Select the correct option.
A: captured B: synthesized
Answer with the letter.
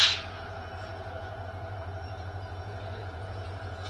B